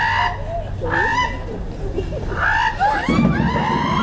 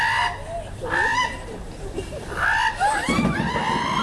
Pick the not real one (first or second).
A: second